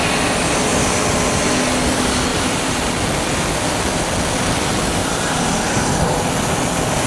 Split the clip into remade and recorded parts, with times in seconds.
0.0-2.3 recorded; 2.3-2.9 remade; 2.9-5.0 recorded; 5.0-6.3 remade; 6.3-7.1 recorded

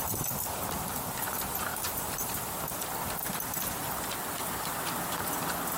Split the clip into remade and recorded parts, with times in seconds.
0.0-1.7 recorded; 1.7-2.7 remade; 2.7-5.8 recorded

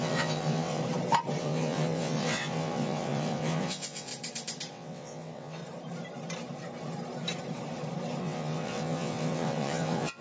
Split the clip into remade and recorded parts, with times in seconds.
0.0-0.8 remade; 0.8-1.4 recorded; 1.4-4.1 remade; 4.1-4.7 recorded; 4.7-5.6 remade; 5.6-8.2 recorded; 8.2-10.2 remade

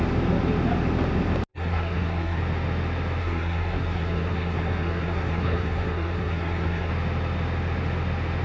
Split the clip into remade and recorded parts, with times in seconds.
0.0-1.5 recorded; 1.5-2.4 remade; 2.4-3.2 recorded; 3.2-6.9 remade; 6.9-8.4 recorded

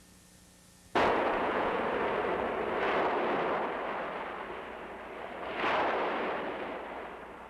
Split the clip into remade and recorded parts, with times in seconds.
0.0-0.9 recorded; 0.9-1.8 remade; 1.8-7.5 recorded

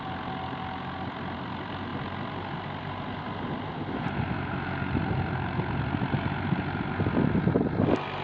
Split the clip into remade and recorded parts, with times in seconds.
0.0-8.2 recorded

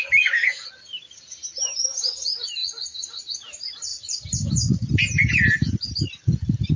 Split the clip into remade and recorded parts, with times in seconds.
0.0-6.8 recorded